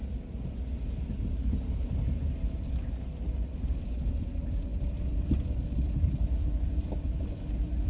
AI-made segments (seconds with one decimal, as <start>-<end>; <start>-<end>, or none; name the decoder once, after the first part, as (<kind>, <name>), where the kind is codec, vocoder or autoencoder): none